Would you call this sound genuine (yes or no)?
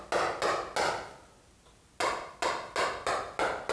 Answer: yes